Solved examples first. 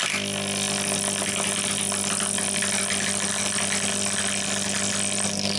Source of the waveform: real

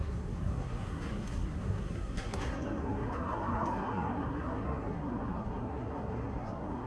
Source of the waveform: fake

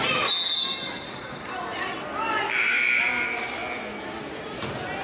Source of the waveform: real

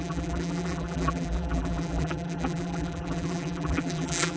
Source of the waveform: fake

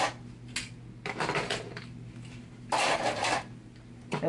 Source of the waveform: real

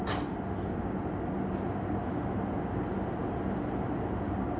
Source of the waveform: real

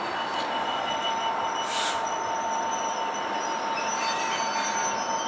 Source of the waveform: real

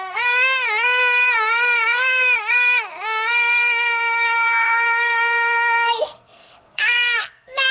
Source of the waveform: fake